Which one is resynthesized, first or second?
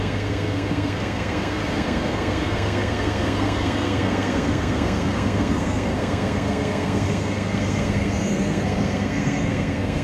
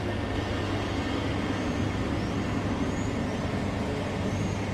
first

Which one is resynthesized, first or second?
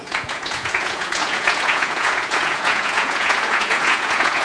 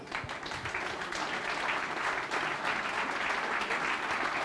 first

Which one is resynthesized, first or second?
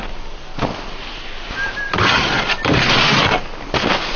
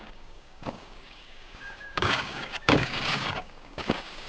second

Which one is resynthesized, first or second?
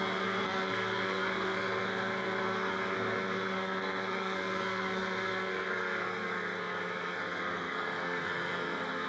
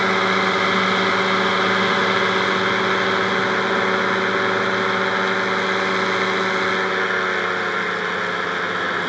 first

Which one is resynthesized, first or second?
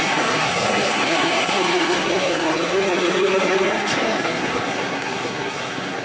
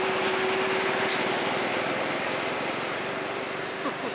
first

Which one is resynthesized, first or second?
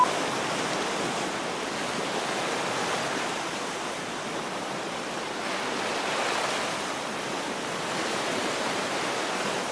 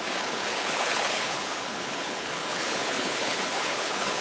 second